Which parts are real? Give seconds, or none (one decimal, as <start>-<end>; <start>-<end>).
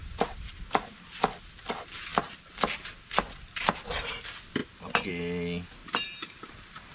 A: 0.5-4.6; 5.1-5.8; 6.5-6.9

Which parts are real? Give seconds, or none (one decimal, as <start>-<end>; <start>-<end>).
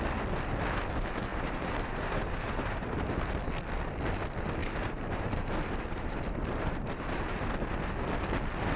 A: 0.0-1.3; 3.2-4.6; 7.5-8.8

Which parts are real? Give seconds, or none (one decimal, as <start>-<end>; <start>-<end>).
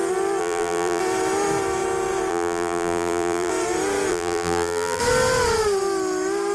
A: 0.0-0.4; 1.0-2.3; 3.5-4.1; 5.0-6.5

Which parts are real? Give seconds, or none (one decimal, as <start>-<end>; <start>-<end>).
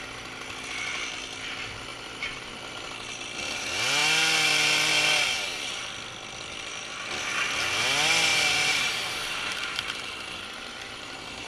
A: 0.0-1.9; 2.8-8.3